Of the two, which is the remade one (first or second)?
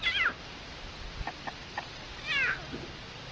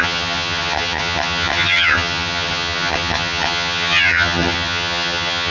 second